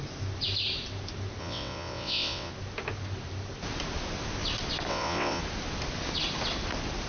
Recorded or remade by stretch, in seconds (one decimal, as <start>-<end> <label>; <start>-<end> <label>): 0.0-1.4 recorded; 1.4-2.5 remade; 2.5-4.9 recorded; 4.9-5.4 remade; 5.4-7.1 recorded